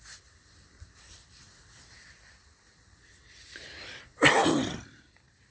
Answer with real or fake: fake